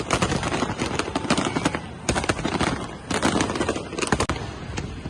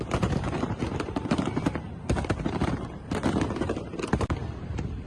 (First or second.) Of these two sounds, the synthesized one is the second